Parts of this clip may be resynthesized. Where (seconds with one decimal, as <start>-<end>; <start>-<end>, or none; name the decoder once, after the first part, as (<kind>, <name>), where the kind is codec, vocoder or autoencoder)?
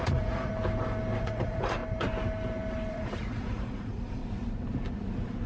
0.0-0.5 (vocoder, Vocos); 1.2-1.8; 2.9-4.2